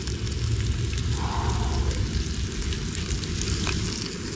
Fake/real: real